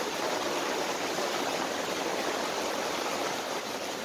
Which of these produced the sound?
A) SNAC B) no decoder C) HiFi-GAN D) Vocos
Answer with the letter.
B